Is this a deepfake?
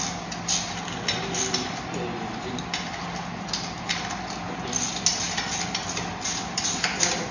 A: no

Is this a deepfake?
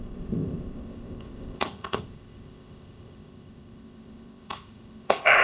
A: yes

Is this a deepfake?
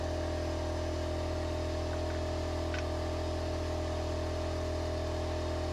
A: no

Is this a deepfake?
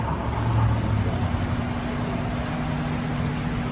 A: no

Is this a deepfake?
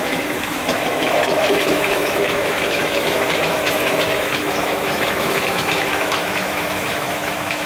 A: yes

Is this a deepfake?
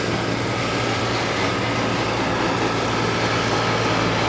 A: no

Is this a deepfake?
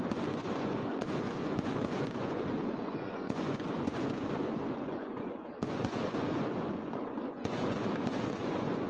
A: yes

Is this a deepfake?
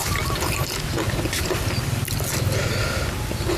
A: no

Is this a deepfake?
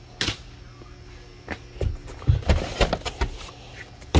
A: no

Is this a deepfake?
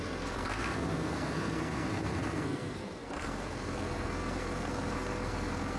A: yes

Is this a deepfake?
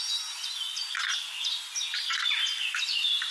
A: no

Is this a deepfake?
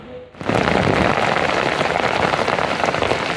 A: no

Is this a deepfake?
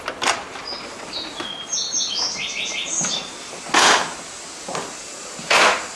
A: no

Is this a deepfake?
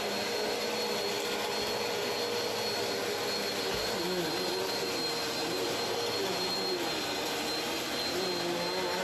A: no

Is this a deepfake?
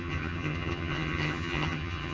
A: yes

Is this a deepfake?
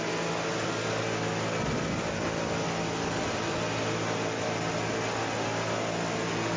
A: no